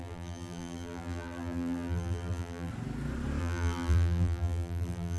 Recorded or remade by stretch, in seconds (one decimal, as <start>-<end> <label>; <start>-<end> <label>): 0.0-2.7 remade; 2.7-3.4 recorded; 3.4-5.2 remade